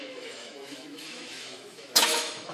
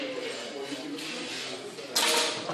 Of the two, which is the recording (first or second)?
second